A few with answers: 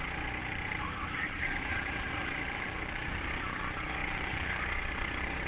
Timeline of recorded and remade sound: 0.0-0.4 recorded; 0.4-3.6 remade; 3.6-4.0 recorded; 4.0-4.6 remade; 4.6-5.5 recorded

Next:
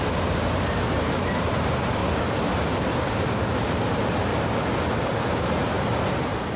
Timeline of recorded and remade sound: 0.0-2.0 remade; 2.0-3.9 recorded; 3.9-4.3 remade; 4.3-5.0 recorded; 5.0-6.6 remade

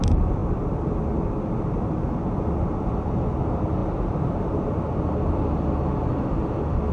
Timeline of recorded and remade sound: 0.0-3.8 recorded; 3.8-4.5 remade; 4.5-6.9 recorded